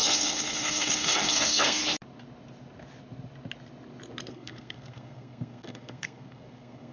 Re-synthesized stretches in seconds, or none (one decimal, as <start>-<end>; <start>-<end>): 0.0-1.8; 4.3-6.9